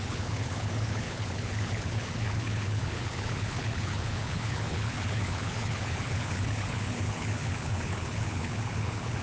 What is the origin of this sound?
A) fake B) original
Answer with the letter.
A